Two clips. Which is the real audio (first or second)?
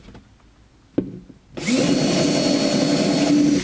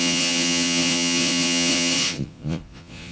first